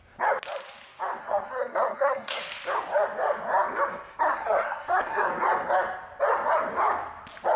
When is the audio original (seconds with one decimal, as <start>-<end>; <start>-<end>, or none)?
0.0-1.2; 2.4-4.2; 5.3-7.6